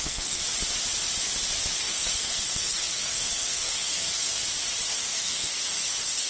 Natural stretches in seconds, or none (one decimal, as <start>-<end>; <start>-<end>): 0.4-1.8; 4.4-4.9